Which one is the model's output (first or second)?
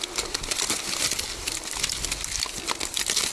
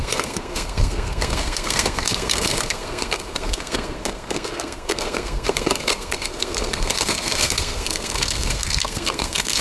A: second